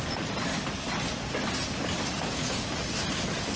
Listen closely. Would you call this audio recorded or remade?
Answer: recorded